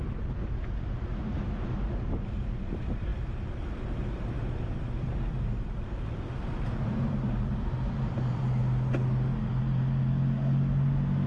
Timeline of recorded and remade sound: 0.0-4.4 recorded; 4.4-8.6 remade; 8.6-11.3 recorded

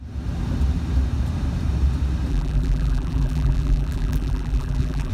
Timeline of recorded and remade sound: 0.0-2.3 recorded; 2.3-5.1 remade

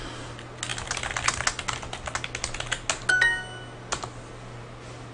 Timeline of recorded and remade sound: 0.0-5.1 recorded